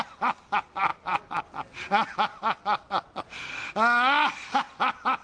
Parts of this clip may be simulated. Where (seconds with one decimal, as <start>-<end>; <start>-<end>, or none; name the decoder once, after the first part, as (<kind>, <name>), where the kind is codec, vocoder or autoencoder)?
2.3-3.4 (vocoder, Vocos)